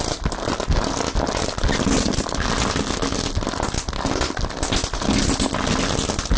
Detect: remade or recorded recorded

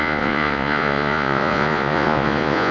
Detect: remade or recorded remade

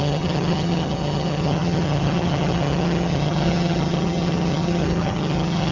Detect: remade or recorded remade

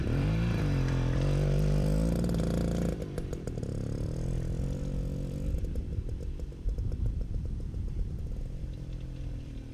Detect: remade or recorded remade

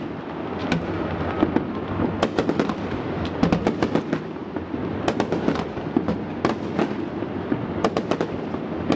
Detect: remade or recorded recorded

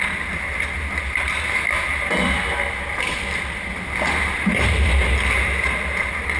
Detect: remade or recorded recorded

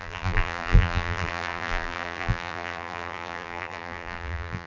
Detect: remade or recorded remade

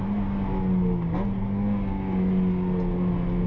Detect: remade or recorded recorded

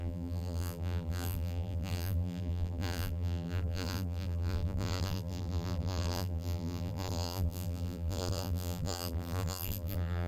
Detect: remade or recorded remade